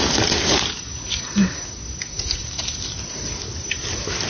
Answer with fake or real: fake